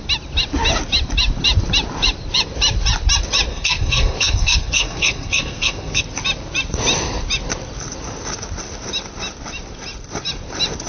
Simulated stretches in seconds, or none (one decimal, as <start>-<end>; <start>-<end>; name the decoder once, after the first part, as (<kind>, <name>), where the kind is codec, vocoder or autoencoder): 3.5-6.0 (codec, SNAC)